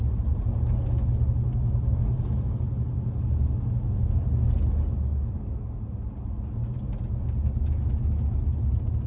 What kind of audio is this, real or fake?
real